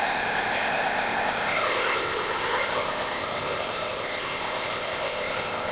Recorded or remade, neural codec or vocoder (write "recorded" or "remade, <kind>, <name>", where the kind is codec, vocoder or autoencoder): remade, codec, ZipCodec